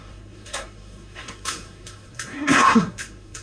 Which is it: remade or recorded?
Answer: remade